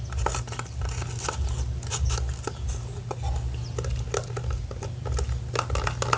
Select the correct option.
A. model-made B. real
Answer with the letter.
B